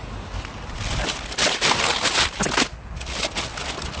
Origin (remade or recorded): recorded